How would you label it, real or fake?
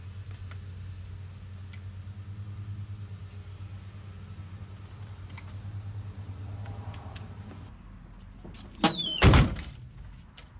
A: real